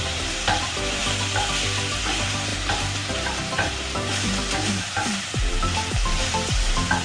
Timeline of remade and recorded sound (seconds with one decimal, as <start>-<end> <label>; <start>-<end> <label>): 0.0-1.0 remade; 1.0-2.0 recorded; 2.0-7.0 remade